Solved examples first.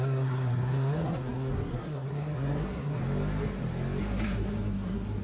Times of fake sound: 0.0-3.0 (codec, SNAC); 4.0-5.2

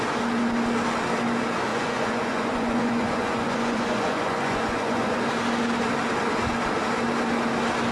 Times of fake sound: 1.7-5.2 (vocoder, Vocos)

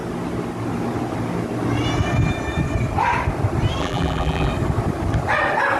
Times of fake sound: 3.8-4.5 (vocoder, BigVGAN v2)